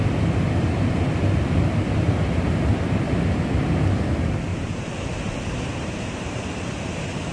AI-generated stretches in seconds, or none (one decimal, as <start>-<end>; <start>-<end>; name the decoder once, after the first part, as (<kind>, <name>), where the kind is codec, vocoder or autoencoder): 4.5-6.5 (vocoder, BigVGAN v2)